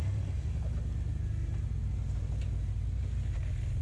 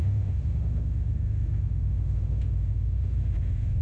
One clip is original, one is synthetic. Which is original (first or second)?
first